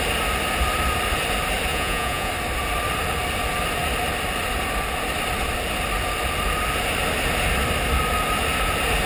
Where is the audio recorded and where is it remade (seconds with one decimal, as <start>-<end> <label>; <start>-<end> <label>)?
0.0-1.7 recorded; 1.7-2.3 remade; 2.3-9.1 recorded